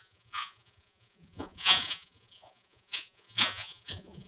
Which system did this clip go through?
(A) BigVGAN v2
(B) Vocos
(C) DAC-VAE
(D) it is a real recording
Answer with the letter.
B